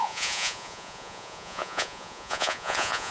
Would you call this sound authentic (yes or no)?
no